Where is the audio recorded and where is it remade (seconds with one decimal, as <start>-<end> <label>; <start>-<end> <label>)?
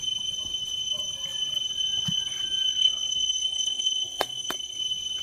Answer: 0.0-2.7 recorded; 2.7-4.8 remade; 4.8-5.2 recorded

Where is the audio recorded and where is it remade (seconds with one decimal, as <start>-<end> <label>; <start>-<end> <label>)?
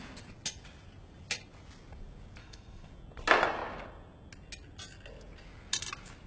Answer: 0.0-2.4 recorded; 2.4-2.9 remade; 2.9-6.3 recorded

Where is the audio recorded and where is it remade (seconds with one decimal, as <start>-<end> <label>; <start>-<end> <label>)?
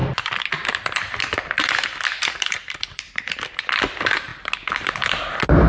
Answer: 0.0-3.1 remade; 3.1-5.7 recorded